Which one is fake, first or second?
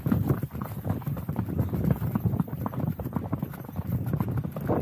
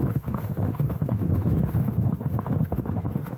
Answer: second